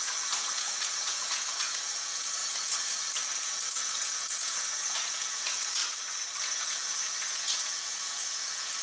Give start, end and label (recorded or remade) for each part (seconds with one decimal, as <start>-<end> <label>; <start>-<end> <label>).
0.0-5.8 remade; 5.8-6.4 recorded; 6.4-8.8 remade